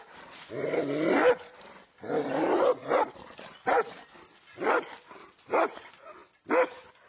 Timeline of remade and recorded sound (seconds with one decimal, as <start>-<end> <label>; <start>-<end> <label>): 0.0-1.2 remade; 1.2-5.2 recorded; 5.2-6.2 remade; 6.2-7.1 recorded